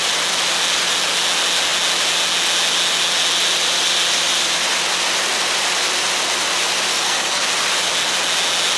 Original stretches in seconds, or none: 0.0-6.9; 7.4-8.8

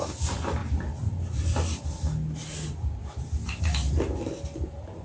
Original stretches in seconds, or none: 0.0-5.0